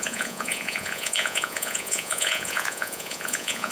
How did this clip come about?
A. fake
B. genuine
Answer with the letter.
A